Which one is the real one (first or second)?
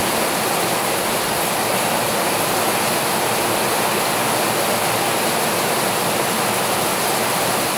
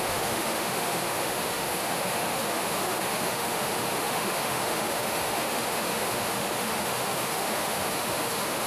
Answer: first